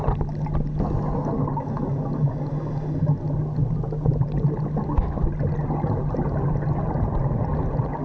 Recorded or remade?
recorded